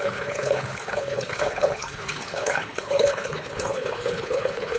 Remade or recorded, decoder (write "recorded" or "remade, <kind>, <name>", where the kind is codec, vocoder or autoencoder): remade, codec, HILCodec